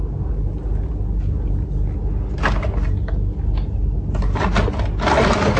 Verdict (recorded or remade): recorded